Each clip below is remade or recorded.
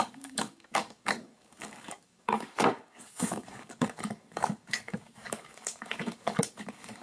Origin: remade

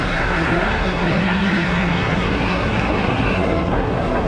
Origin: remade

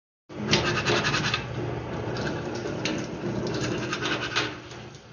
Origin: recorded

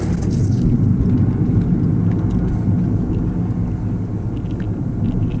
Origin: recorded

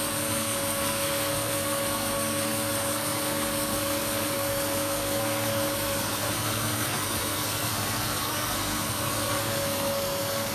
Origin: remade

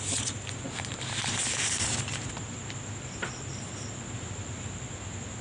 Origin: recorded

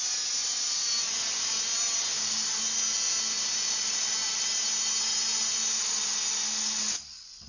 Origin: recorded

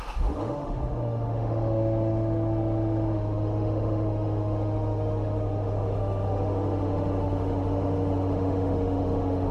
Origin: remade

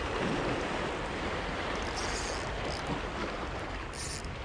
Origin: recorded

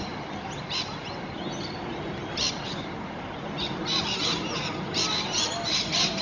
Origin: recorded